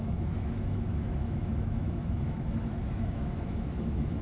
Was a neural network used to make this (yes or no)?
yes